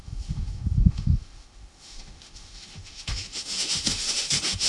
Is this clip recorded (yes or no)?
no